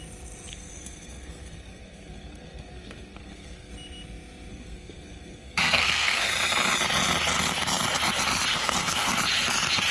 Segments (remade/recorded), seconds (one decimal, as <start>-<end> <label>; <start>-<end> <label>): 0.0-0.5 recorded; 0.5-3.7 remade; 3.7-4.5 recorded; 4.5-6.3 remade; 6.3-8.5 recorded; 8.5-9.1 remade; 9.1-9.9 recorded